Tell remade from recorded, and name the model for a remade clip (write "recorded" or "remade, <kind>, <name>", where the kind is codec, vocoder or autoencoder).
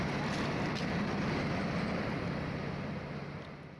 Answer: recorded